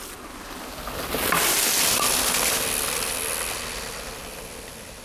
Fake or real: real